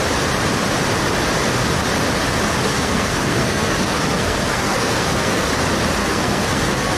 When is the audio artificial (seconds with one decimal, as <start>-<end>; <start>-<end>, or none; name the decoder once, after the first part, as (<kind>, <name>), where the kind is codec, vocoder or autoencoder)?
2.7-5.5 (codec, SNAC); 6.0-7.0